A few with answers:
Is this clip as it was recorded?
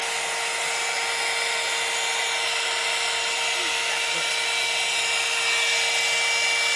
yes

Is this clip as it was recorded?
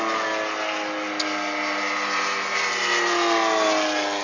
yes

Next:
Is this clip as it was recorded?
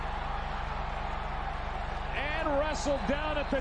yes